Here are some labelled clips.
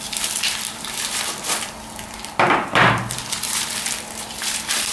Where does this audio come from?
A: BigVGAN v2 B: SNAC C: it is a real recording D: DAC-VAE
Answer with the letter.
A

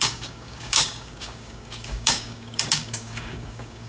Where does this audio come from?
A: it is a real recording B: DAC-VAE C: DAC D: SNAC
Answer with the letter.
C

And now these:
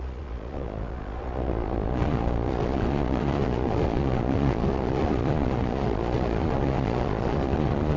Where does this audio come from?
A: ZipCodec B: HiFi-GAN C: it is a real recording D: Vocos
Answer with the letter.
D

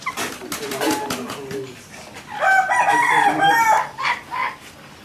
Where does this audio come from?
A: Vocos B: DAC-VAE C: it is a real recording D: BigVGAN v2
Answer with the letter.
C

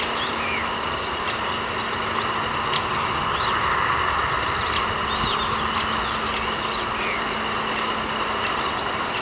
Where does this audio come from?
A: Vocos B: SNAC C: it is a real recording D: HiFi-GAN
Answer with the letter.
C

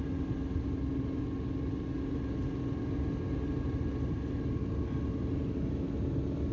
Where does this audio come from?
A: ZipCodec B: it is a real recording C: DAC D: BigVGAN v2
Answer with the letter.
B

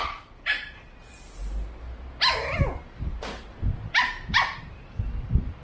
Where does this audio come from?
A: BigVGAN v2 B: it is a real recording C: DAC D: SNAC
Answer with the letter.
B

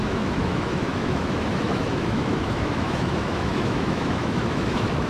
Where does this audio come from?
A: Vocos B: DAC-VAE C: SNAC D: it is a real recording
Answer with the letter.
B